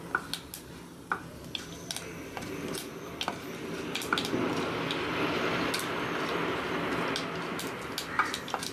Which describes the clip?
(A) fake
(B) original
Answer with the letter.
B